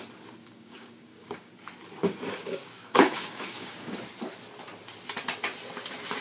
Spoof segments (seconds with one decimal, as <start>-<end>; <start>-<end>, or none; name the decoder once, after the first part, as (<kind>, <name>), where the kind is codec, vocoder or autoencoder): 0.4-1.5 (codec, DAC); 2.4-4.0